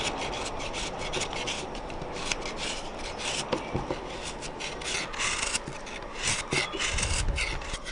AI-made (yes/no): no